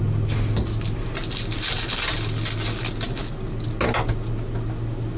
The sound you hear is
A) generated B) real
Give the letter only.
B